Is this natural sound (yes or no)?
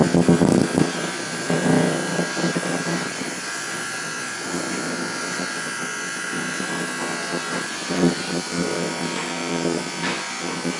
no